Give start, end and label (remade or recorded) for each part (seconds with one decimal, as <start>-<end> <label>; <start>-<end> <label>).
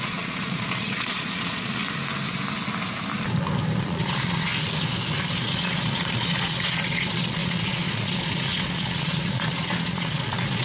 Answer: 0.0-1.8 remade; 1.8-3.8 recorded; 3.8-4.5 remade; 4.5-5.4 recorded; 5.4-10.6 remade